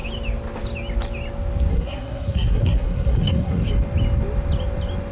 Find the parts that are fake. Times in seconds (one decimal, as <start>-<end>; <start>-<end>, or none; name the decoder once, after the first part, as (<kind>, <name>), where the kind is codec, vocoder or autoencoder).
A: 1.7-3.7 (codec, SNAC)